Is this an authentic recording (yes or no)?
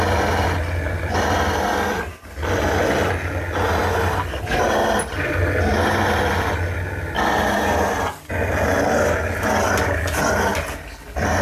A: yes